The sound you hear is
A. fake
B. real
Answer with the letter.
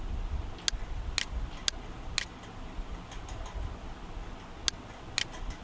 B